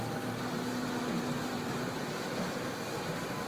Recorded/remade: remade